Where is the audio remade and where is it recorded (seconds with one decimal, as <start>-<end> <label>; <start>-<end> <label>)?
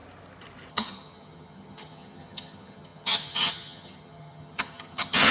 0.0-0.7 recorded; 0.7-5.3 remade